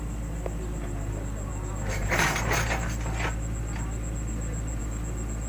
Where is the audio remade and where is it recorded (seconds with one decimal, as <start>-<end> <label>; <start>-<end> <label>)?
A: 0.0-5.5 recorded